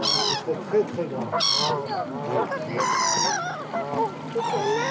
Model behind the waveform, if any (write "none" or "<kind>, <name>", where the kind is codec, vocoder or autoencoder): none